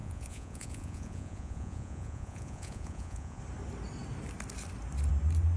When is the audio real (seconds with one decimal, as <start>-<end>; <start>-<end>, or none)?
3.4-5.6